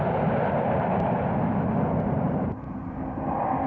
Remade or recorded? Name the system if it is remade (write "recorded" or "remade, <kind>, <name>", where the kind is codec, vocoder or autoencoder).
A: recorded